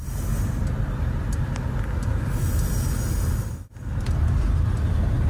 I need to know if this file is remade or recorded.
recorded